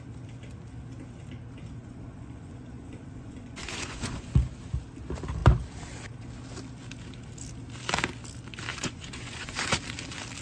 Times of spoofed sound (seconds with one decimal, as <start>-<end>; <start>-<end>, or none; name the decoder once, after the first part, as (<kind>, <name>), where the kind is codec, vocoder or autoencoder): 1.8-4.3 (vocoder, Vocos); 8.7-9.7